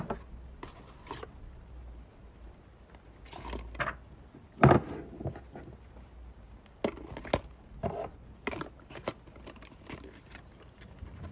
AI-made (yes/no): no